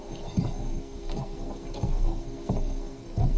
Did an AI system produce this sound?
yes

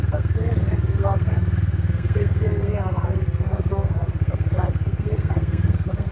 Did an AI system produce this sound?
yes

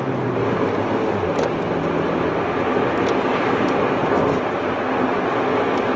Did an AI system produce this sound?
no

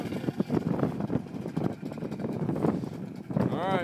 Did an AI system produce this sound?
no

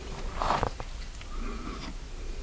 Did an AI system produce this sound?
no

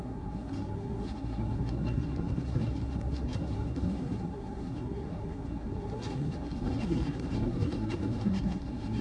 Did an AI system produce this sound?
yes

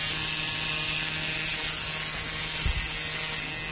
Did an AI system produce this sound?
no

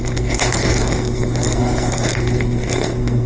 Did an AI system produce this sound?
yes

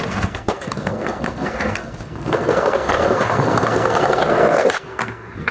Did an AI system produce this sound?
yes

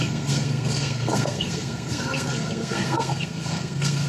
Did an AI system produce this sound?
yes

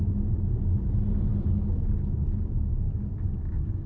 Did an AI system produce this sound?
no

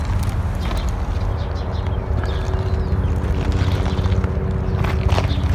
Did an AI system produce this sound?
no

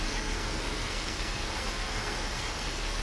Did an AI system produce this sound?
yes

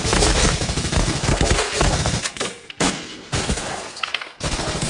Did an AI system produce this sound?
yes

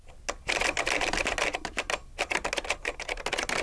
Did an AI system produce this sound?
no